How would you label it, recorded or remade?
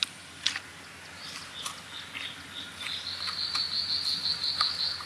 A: recorded